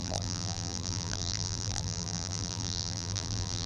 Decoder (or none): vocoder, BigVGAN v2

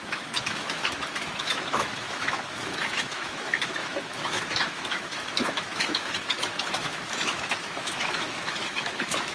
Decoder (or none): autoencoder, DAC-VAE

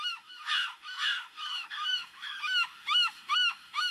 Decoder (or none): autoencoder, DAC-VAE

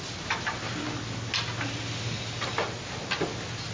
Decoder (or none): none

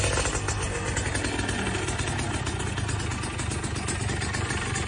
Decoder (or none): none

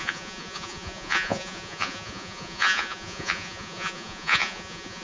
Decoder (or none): vocoder, Vocos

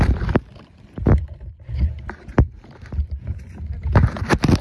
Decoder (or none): none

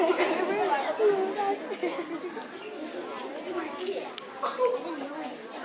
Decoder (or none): none